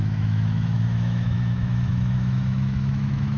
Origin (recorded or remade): remade